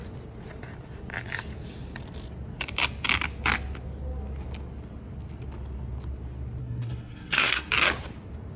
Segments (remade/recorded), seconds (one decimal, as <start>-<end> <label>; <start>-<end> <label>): 0.0-6.6 recorded; 6.6-7.7 remade; 7.7-8.6 recorded